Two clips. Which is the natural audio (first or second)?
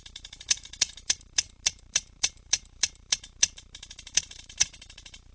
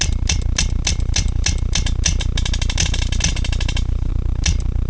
second